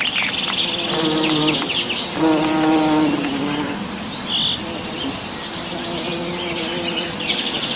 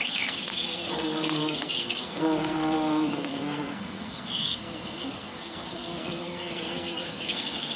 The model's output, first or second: second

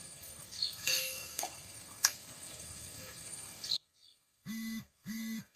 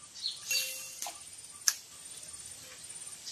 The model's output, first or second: first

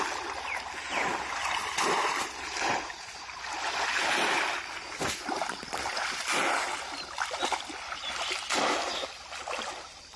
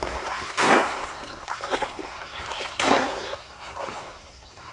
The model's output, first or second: second